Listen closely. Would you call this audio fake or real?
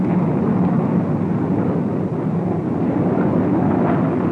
real